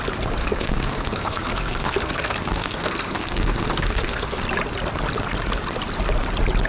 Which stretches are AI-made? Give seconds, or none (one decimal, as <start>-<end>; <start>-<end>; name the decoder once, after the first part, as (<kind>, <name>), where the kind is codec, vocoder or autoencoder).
0.4-4.4 (codec, SNAC)